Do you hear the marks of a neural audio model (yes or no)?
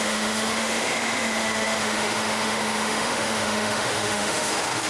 yes